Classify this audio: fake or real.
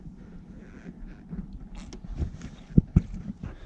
real